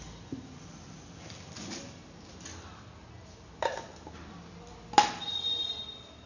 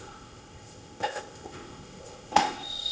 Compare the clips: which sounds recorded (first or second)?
first